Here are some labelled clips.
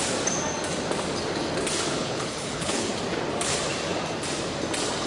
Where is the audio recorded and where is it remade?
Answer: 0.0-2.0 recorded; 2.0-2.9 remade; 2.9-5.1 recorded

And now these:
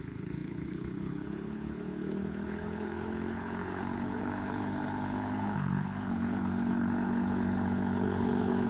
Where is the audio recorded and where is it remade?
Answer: 0.0-8.7 remade

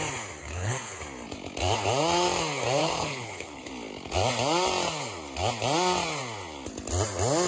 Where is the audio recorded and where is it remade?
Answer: 0.0-0.4 recorded; 0.4-1.0 remade; 1.0-2.8 recorded; 2.8-3.7 remade; 3.7-7.5 recorded

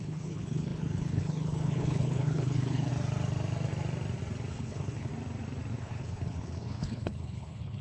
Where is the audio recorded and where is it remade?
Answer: 0.0-2.9 remade; 2.9-4.5 recorded; 4.5-5.1 remade; 5.1-5.8 recorded; 5.8-7.8 remade

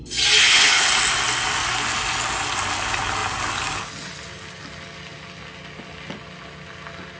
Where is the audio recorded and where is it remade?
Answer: 0.0-0.4 recorded; 0.4-0.9 remade; 0.9-7.2 recorded

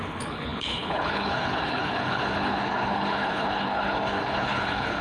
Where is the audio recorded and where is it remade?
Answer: 0.0-5.0 remade

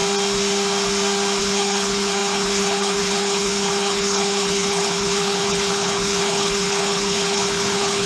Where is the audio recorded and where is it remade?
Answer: 0.0-1.4 recorded; 1.4-8.1 remade